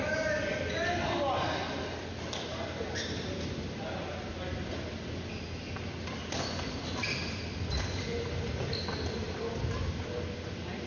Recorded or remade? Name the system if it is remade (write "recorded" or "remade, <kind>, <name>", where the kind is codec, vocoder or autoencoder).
recorded